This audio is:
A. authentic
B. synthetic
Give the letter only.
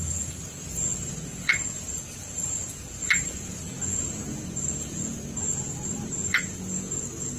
B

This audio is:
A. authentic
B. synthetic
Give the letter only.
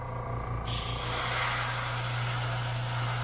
A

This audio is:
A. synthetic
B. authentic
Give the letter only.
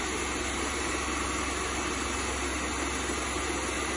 B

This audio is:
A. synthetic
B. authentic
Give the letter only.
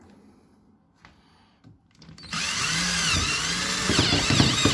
B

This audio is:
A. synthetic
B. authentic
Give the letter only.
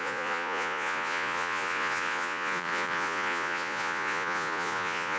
A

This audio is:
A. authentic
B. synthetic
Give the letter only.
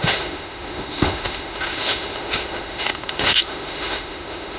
B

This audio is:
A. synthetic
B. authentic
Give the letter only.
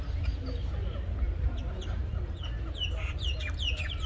B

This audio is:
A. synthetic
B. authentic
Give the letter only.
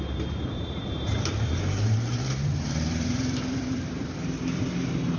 A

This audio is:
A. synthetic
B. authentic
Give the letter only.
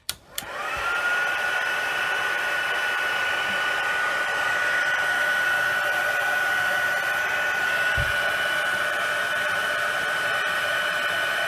A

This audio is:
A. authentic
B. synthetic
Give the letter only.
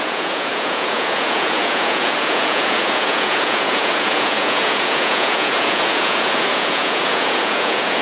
B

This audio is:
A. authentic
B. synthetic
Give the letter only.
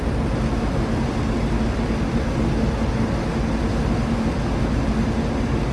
A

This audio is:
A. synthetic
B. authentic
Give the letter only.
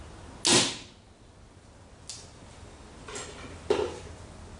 B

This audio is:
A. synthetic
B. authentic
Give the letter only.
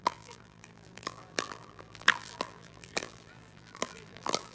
A